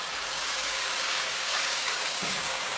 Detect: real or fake fake